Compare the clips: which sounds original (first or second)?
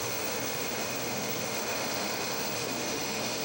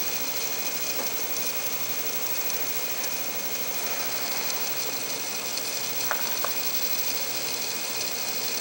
second